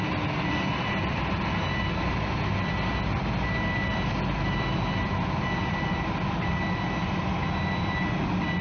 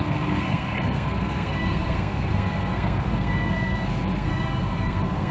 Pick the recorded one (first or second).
first